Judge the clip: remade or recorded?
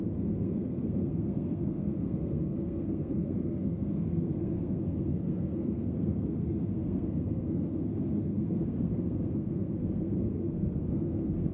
remade